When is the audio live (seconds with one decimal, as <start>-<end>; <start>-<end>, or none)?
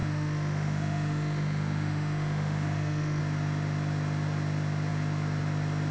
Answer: 3.2-5.9